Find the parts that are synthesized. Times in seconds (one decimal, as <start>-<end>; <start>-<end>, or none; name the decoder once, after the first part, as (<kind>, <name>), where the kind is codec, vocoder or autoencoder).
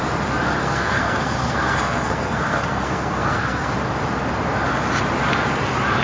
0.6-3.7 (codec, SNAC)